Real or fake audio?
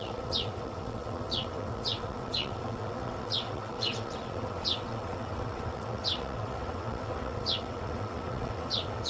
fake